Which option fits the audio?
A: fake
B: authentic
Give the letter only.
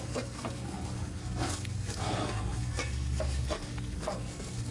A